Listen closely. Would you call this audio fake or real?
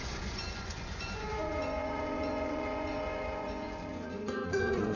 fake